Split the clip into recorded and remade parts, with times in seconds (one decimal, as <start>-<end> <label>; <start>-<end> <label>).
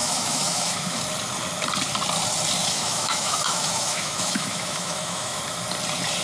0.0-1.0 remade; 1.0-2.6 recorded; 2.6-5.4 remade; 5.4-6.2 recorded